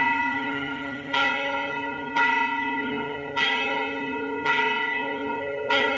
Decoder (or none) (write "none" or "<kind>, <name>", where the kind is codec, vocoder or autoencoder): vocoder, HiFi-GAN